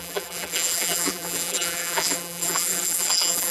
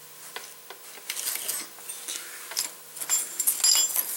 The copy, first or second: first